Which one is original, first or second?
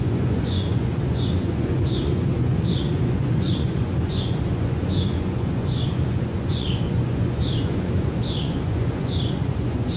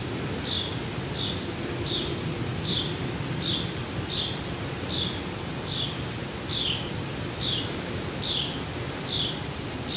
second